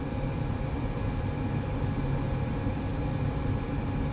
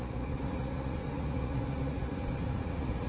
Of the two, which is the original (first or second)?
first